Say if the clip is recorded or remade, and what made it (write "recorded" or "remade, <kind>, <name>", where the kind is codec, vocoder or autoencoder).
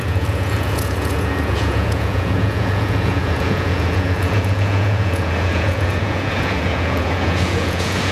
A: remade, vocoder, Vocos